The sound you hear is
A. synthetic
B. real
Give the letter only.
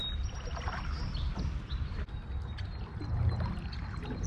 B